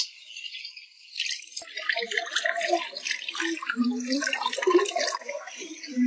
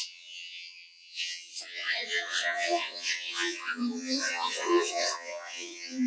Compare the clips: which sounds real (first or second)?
first